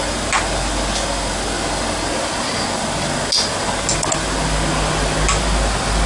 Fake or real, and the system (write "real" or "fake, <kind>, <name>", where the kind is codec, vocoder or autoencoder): real